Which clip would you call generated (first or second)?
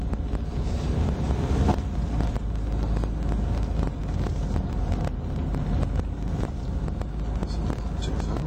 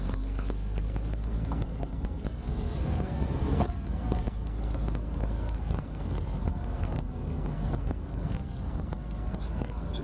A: second